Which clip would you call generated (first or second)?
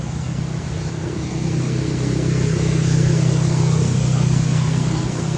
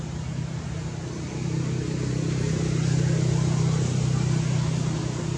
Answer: first